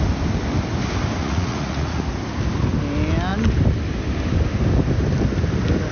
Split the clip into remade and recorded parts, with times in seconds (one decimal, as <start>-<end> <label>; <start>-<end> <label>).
0.0-1.2 recorded; 1.2-2.0 remade; 2.0-5.9 recorded